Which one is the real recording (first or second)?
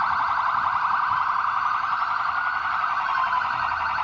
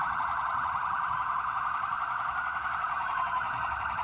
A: first